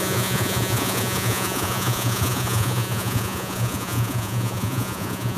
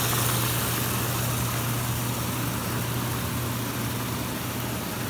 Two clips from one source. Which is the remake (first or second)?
first